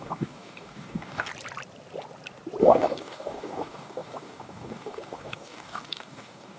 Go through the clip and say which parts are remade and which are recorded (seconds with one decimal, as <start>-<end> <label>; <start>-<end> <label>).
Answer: 0.0-1.3 remade; 1.3-2.6 recorded; 2.6-6.6 remade